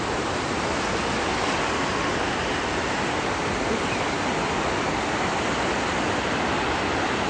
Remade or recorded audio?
recorded